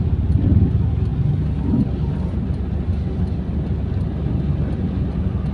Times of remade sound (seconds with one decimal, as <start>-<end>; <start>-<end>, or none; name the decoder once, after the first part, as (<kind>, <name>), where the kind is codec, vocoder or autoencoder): none